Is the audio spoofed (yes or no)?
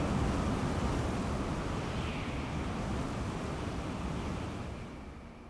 no